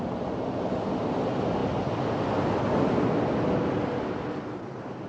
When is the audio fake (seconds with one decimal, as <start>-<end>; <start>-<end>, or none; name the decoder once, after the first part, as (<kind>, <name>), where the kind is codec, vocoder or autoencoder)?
none